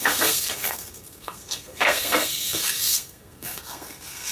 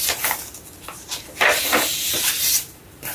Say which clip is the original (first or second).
second